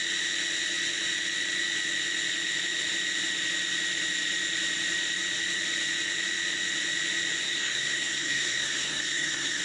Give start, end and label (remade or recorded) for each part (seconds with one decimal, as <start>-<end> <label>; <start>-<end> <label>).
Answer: 0.0-7.4 recorded; 7.4-9.6 remade